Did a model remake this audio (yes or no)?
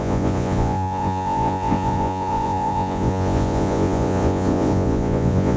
yes